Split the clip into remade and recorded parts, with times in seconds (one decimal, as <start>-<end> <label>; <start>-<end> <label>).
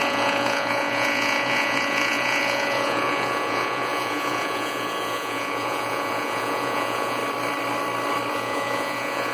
0.0-7.2 remade; 7.2-8.3 recorded; 8.3-9.3 remade